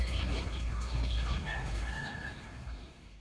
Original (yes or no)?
no